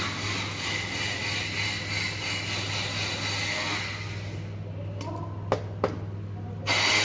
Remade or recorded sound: recorded